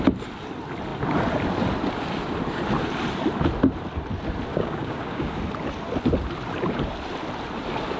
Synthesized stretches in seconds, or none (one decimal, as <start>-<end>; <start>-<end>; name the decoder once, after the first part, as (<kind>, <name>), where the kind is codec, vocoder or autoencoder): 4.5-5.4 (codec, DAC)